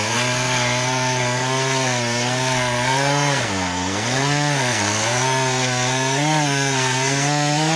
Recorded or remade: remade